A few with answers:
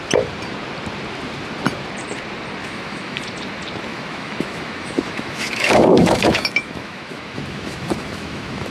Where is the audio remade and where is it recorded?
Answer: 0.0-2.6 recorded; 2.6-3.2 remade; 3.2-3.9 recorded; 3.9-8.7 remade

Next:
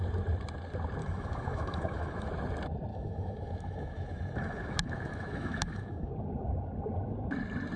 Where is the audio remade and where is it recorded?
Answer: 0.0-1.0 recorded; 1.0-2.3 remade; 2.3-2.9 recorded; 2.9-6.1 remade; 6.1-7.8 recorded

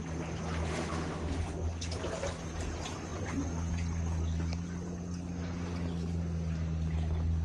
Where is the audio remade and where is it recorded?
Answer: 0.0-0.7 recorded; 0.7-1.4 remade; 1.4-7.4 recorded

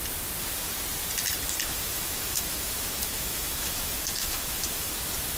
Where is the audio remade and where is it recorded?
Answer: 0.0-1.7 recorded; 1.7-4.9 remade; 4.9-5.4 recorded

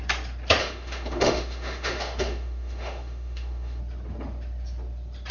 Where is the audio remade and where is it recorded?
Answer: 0.0-0.6 recorded; 0.6-3.8 remade; 3.8-5.3 recorded

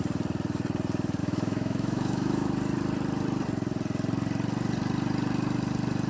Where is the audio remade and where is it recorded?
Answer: 0.0-1.2 recorded; 1.2-2.6 remade; 2.6-6.1 recorded